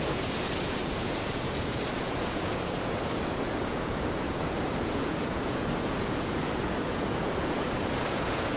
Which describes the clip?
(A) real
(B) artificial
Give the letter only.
B